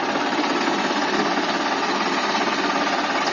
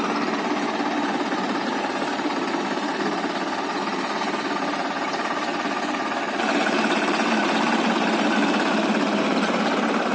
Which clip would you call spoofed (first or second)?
second